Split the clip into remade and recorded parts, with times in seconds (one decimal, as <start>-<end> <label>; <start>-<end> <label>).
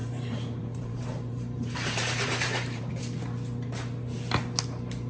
0.0-3.0 remade; 3.0-5.1 recorded